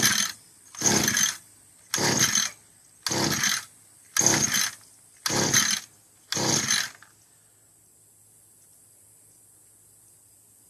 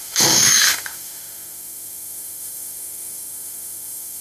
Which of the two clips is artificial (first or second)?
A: second